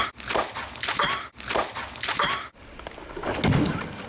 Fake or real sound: real